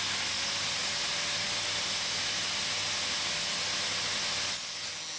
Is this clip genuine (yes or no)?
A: yes